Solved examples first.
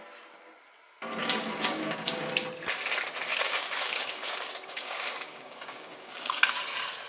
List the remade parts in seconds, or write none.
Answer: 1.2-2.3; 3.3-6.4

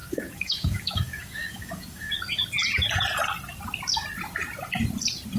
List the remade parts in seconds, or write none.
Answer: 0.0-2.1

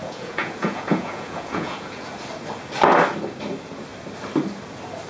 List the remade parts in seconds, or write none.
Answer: 0.0-2.1